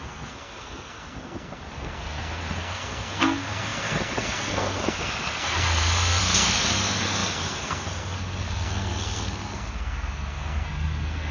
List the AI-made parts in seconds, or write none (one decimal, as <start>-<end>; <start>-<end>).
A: 0.0-11.3